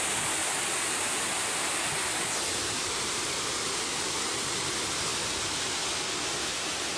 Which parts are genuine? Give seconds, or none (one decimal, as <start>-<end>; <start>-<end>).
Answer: 0.0-0.4; 4.6-6.5